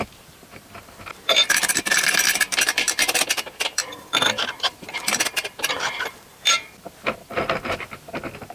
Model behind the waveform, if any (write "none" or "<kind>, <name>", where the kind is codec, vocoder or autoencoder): vocoder, BigVGAN v2